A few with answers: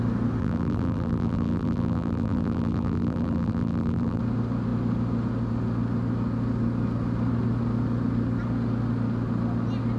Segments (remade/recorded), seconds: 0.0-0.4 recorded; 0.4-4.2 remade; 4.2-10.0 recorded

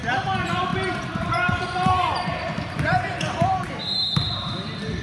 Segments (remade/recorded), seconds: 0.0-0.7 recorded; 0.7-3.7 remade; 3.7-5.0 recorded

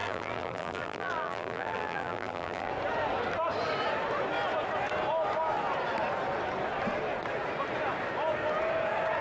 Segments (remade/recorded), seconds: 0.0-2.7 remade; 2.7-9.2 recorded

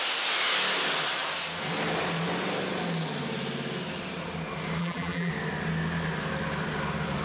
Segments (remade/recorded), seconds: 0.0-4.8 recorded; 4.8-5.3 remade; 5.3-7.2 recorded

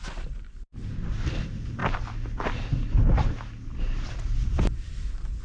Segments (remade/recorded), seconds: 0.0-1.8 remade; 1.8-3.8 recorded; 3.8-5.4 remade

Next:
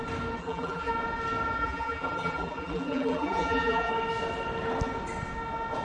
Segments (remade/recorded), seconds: 0.0-0.4 recorded; 0.4-0.9 remade; 0.9-1.6 recorded; 1.6-3.9 remade; 3.9-5.8 recorded

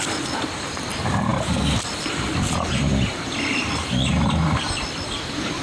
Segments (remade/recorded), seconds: 0.0-5.6 recorded

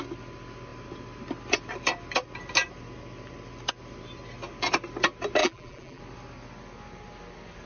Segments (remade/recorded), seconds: 0.0-5.4 recorded; 5.4-6.0 remade; 6.0-7.7 recorded